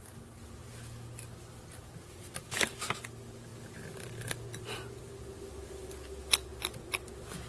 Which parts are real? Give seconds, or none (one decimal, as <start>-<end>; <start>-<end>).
0.0-7.5